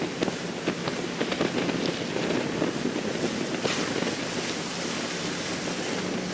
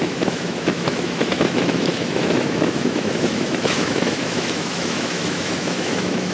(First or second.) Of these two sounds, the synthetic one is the second